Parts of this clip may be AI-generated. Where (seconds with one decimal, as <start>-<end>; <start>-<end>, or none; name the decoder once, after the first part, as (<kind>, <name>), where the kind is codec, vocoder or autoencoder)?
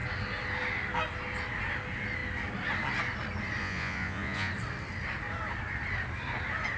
3.6-4.5 (vocoder, Vocos)